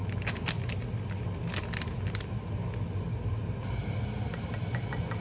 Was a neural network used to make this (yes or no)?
no